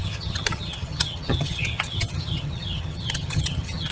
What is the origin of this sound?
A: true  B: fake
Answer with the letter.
B